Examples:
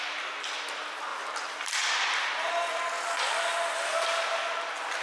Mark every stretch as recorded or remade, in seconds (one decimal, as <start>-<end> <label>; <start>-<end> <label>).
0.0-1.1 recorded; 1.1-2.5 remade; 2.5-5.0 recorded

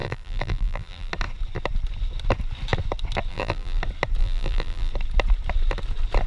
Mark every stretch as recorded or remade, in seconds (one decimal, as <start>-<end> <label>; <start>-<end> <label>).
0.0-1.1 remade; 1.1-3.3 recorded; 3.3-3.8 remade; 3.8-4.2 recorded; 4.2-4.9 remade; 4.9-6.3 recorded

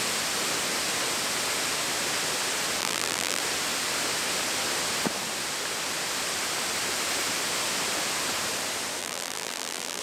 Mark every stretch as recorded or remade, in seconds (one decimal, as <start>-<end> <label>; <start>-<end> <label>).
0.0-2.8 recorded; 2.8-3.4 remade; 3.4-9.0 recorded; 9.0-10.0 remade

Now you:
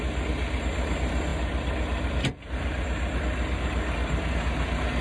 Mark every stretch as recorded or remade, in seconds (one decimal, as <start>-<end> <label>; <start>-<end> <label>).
0.0-5.0 recorded

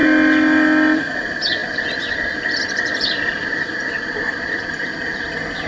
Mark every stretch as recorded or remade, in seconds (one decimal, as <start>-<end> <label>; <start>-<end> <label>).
0.0-1.6 recorded; 1.6-5.0 remade; 5.0-5.7 recorded

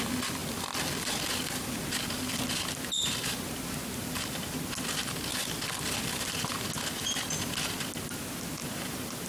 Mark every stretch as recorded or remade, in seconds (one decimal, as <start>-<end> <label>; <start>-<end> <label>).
0.0-4.0 recorded; 4.0-4.5 remade; 4.5-9.3 recorded

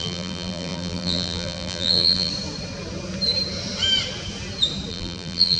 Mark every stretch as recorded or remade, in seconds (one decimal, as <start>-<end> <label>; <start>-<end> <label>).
0.0-2.3 remade; 2.3-4.9 recorded; 4.9-5.6 remade